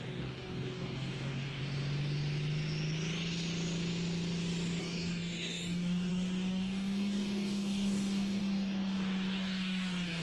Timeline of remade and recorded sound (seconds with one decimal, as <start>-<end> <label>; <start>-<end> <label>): 0.0-1.6 remade; 1.6-4.8 recorded; 4.8-10.2 remade